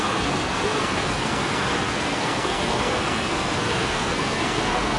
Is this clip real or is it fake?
fake